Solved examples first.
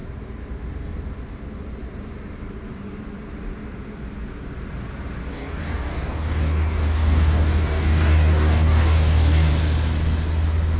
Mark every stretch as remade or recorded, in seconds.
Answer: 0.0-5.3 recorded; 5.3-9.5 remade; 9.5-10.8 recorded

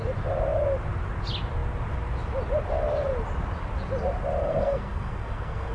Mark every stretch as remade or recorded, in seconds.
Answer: 0.0-4.4 recorded; 4.4-5.7 remade

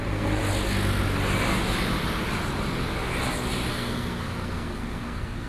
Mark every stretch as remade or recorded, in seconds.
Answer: 0.0-0.4 remade; 0.4-3.7 recorded; 3.7-5.5 remade

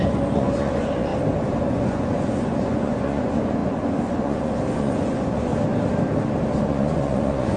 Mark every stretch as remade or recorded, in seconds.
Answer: 0.0-1.1 remade; 1.1-1.6 recorded; 1.6-5.5 remade; 5.5-6.6 recorded; 6.6-7.6 remade